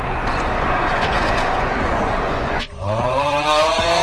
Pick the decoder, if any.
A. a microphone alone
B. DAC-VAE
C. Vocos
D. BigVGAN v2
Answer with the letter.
C